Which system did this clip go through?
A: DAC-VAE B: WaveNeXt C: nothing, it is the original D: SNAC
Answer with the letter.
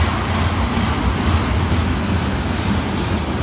C